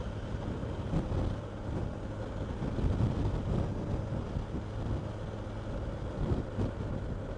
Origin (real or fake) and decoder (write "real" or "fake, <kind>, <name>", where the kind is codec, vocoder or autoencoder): real